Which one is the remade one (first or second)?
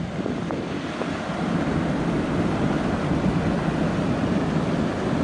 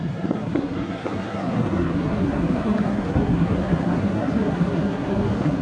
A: second